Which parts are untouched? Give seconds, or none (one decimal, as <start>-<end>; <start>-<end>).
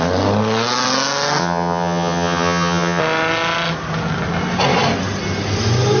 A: 0.0-1.4; 3.0-6.0